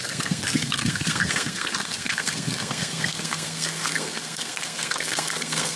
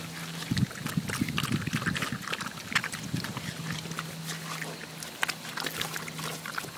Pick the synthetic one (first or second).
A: first